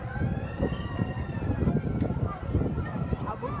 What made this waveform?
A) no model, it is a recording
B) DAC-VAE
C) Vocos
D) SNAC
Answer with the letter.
A